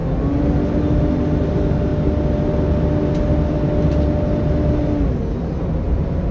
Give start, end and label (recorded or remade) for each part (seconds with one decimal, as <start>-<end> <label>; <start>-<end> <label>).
0.0-6.3 recorded